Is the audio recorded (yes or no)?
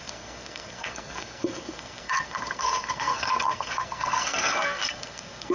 no